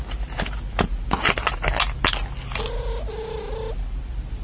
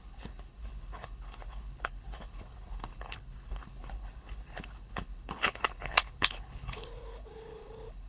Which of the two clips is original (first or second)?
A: first